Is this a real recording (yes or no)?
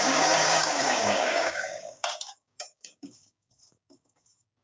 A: no